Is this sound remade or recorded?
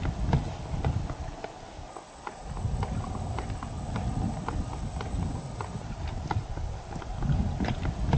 recorded